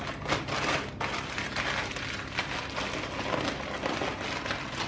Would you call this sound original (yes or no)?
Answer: yes